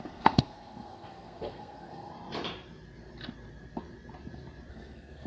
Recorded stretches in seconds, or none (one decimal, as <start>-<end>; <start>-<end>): 2.1-4.7